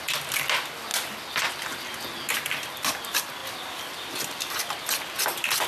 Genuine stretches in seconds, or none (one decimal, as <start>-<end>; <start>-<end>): 0.0-5.7